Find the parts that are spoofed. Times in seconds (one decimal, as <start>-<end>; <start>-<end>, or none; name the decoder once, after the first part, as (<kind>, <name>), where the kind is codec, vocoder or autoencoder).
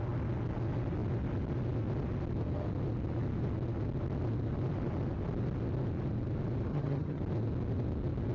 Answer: 6.7-7.2 (vocoder, HiFi-GAN)